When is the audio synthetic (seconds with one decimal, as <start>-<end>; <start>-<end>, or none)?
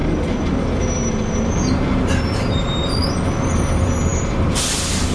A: 2.5-3.0; 3.6-5.1